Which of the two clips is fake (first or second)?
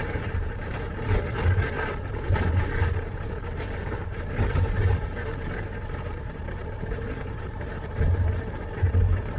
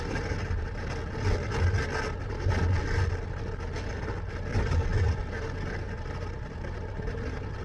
first